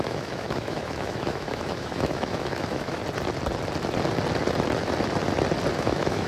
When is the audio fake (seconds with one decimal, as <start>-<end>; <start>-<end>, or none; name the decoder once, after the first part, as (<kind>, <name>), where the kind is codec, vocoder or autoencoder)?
0.0-3.0 (autoencoder, DAC-VAE); 5.7-6.3